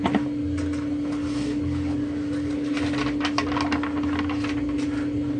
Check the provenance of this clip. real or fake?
real